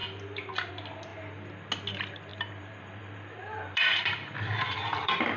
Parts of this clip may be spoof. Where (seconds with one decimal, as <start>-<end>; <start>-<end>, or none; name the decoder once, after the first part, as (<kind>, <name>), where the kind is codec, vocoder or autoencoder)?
2.3-5.4 (vocoder, BigVGAN v2)